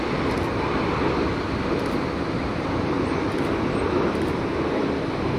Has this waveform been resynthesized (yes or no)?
no